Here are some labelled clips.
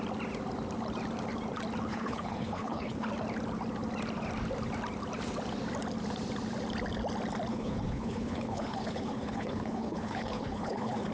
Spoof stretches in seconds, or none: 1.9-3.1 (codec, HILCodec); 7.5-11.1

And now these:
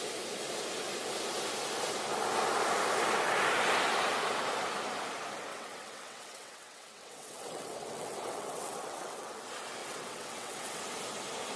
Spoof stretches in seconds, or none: 5.5-9.3 (vocoder, WaveNeXt); 9.8-10.8